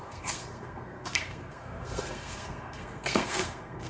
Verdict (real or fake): fake